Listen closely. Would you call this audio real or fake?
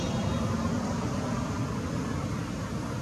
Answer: real